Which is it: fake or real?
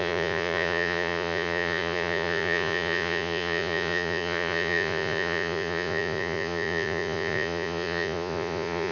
fake